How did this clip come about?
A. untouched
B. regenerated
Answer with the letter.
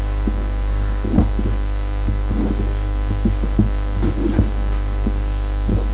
B